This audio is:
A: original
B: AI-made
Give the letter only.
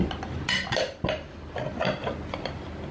A